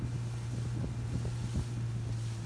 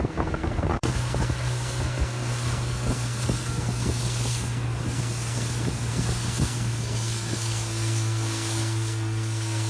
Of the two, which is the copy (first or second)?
second